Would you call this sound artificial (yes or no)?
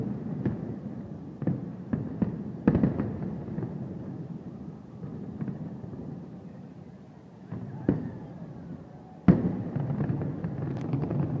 no